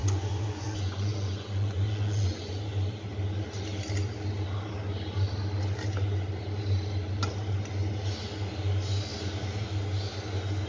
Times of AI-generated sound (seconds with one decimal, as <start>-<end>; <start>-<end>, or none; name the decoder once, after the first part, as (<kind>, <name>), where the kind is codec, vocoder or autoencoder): 0.0-2.6 (vocoder, Vocos)